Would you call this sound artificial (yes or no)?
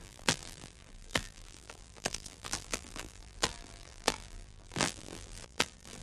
yes